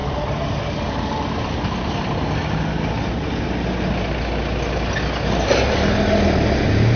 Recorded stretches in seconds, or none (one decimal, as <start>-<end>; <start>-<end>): 0.0-7.0

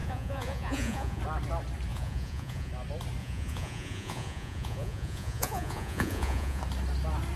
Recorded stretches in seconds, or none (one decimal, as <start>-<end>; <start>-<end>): 1.2-1.9; 2.7-3.2; 6.6-7.4

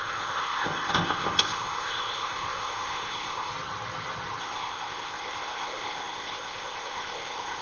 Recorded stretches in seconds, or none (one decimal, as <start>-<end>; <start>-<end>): 3.5-4.4

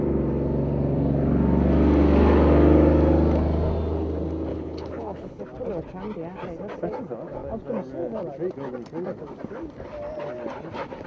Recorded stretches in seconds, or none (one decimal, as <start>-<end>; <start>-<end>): 0.0-4.5; 5.4-11.1

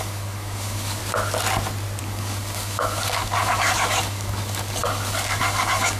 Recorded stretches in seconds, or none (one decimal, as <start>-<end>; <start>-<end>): 1.0-2.0